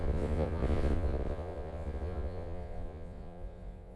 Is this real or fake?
fake